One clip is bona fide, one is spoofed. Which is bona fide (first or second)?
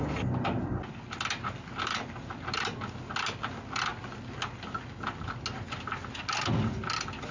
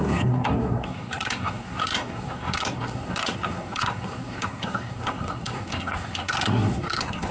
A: first